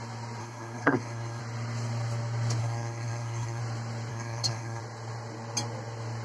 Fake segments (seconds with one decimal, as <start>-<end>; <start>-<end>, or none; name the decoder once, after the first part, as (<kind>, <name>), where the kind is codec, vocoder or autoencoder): 0.4-1.4 (codec, SNAC); 2.6-3.6; 4.1-4.8